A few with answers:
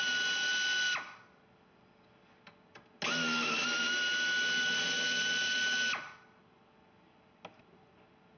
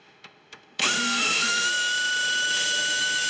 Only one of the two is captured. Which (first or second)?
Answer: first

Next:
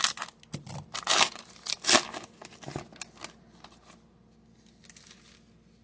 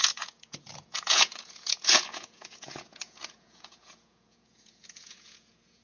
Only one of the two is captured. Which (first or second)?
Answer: first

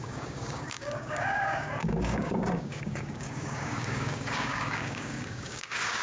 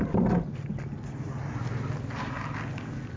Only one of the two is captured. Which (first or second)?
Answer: second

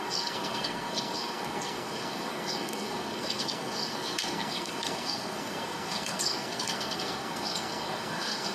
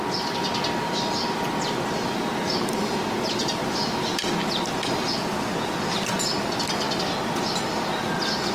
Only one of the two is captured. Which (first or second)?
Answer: second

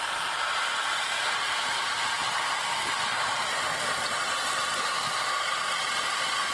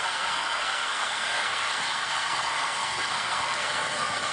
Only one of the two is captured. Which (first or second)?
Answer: first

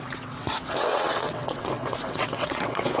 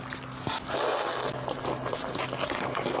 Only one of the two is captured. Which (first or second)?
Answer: second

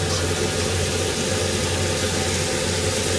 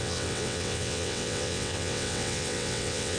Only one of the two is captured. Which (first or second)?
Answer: first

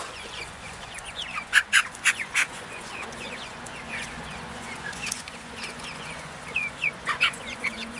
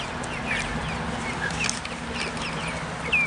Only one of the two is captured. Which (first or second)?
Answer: second